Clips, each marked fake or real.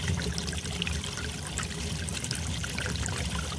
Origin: real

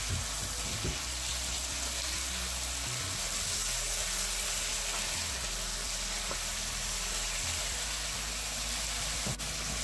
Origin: real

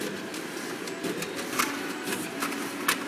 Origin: real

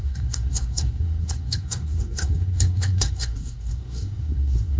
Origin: fake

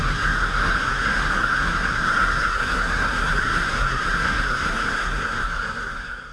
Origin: fake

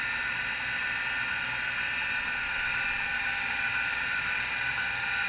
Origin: real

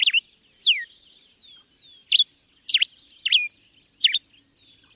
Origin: real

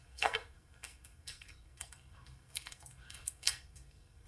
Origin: fake